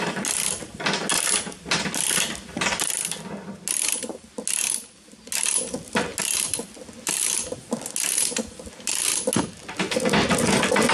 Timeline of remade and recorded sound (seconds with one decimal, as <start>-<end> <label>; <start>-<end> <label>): 0.0-10.9 recorded

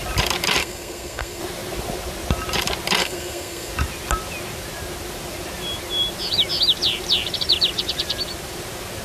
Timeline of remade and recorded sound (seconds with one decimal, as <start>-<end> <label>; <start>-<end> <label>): 0.0-0.6 recorded; 0.6-1.4 remade; 1.4-3.0 recorded; 3.0-3.7 remade; 3.7-9.0 recorded

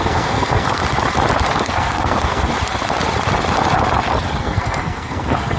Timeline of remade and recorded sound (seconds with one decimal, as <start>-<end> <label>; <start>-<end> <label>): 0.0-0.8 remade; 0.8-1.6 recorded; 1.6-2.5 remade; 2.5-4.4 recorded; 4.4-5.6 remade

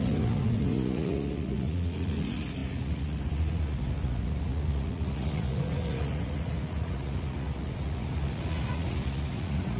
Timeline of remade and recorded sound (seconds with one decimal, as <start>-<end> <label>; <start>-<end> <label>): 0.0-9.8 remade

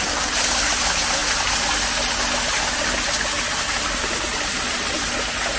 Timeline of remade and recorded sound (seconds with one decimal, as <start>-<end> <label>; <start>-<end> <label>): 0.0-5.6 recorded